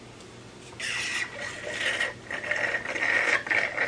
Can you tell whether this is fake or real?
real